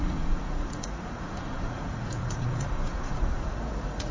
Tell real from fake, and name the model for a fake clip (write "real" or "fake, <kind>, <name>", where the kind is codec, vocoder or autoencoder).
fake, vocoder, Vocos